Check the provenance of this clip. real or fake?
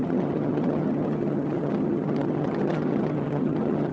fake